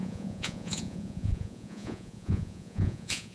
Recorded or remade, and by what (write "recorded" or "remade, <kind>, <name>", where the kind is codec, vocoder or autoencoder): remade, vocoder, Vocos